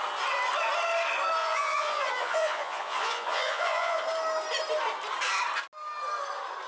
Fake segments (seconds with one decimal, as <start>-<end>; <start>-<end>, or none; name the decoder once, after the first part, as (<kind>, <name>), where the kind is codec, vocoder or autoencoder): 1.4-4.0 (vocoder, Vocos)